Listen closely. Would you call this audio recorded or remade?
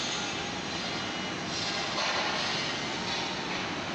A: recorded